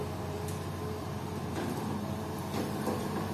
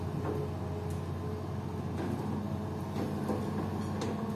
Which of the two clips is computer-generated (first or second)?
first